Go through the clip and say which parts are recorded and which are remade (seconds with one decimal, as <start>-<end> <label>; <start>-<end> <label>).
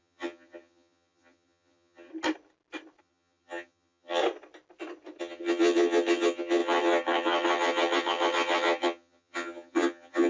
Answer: 0.0-2.1 remade; 2.1-3.0 recorded; 3.0-4.2 remade; 4.2-5.2 recorded; 5.2-10.3 remade